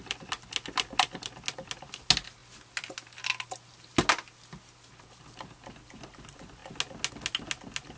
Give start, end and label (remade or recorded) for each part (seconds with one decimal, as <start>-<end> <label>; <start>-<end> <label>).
0.0-8.0 recorded